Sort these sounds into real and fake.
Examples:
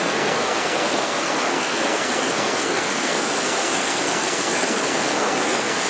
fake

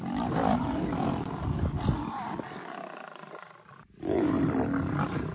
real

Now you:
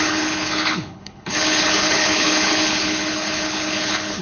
fake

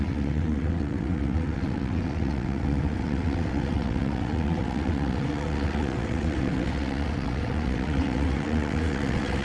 fake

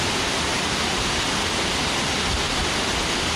real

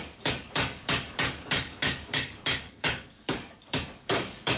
fake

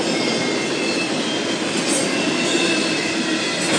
real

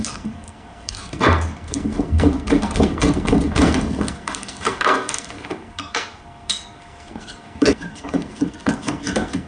fake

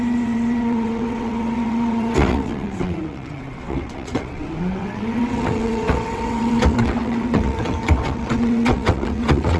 fake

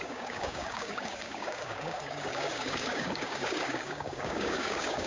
fake